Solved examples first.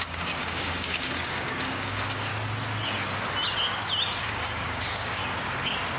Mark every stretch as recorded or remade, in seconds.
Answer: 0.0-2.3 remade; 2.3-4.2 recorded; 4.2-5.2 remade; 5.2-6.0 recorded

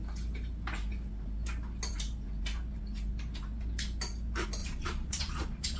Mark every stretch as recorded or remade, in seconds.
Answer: 0.0-4.6 recorded; 4.6-5.8 remade